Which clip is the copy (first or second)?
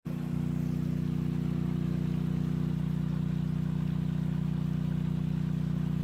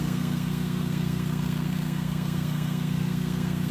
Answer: second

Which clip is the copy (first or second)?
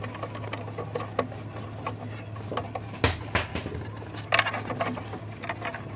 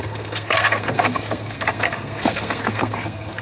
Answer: second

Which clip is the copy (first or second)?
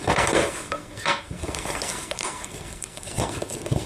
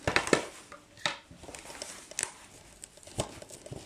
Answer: first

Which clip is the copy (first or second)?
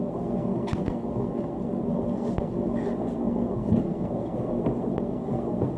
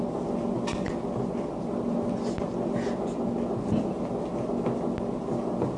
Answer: first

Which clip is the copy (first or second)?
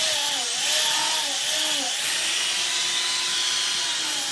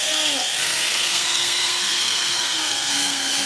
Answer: second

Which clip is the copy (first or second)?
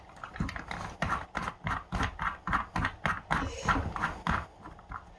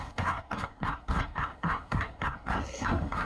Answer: second